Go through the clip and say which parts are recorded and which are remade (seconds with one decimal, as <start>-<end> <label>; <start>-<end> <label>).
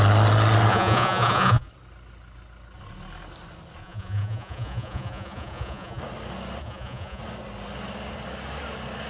0.0-0.7 recorded; 0.7-1.7 remade; 1.7-3.8 recorded; 3.8-6.0 remade; 6.0-6.6 recorded; 6.6-7.2 remade; 7.2-9.1 recorded